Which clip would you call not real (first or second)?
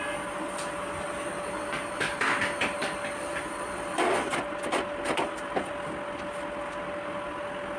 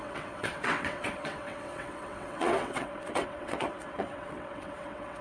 second